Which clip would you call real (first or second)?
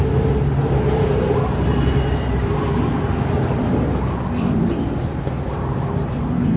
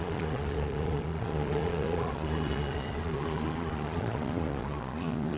first